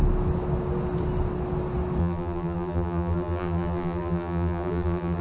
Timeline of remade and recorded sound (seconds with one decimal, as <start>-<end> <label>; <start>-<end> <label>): 0.0-2.0 recorded; 2.0-5.2 remade